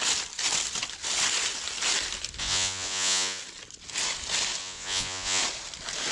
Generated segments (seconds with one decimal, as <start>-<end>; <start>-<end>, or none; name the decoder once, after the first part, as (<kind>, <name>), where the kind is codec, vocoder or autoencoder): 2.4-3.4 (vocoder, Vocos); 4.6-5.4